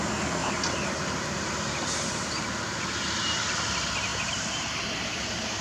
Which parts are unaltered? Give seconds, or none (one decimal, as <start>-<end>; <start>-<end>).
0.0-0.4; 2.4-4.1